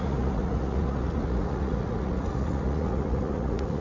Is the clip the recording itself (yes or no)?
no